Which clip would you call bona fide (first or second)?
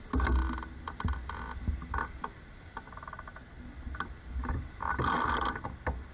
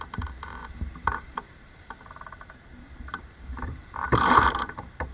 first